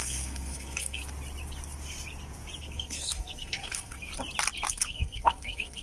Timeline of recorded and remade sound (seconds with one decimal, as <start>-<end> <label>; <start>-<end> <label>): 0.0-1.0 remade; 1.0-2.6 recorded; 2.6-4.1 remade; 4.1-4.7 recorded; 4.7-5.8 remade